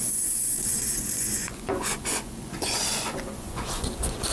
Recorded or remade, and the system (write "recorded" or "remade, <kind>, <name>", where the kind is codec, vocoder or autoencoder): remade, vocoder, Vocos